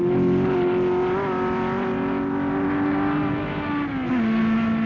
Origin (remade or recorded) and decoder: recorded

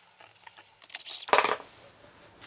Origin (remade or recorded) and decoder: recorded